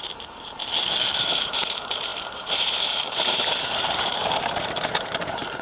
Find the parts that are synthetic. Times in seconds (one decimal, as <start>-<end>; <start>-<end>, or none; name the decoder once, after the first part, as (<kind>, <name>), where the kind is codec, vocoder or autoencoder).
0.0-0.6 (vocoder, BigVGAN v2); 1.3-5.6